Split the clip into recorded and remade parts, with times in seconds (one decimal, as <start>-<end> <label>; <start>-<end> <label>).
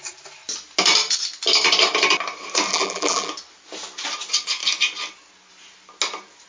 0.0-2.7 recorded; 2.7-3.3 remade; 3.3-6.5 recorded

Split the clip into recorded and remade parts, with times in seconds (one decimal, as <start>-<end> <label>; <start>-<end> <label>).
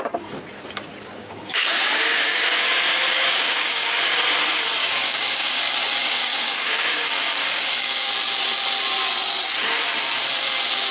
0.0-1.2 recorded; 1.2-4.0 remade; 4.0-4.8 recorded; 4.8-5.6 remade; 5.6-6.0 recorded; 6.0-8.1 remade; 8.1-10.9 recorded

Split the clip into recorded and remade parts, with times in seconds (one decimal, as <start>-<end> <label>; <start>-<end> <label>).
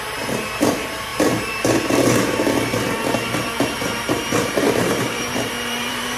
0.0-6.2 remade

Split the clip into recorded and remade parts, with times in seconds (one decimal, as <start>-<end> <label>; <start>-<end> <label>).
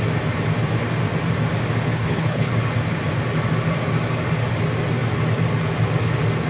0.0-1.9 recorded; 1.9-2.5 remade; 2.5-6.5 recorded